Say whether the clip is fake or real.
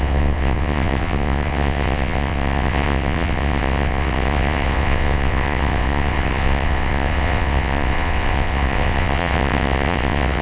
fake